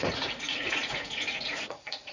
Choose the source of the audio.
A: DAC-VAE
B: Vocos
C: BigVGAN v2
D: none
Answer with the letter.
B